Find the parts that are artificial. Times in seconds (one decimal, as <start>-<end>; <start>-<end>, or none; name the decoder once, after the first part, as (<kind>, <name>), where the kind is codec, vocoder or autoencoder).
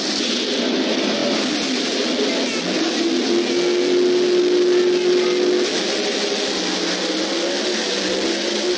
none